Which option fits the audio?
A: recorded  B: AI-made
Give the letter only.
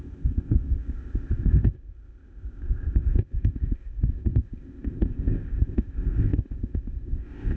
B